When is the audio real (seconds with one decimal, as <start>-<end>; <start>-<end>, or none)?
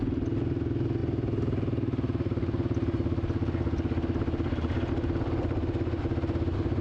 0.0-6.8